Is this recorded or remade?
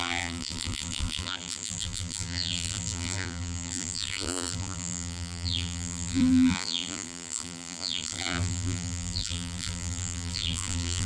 remade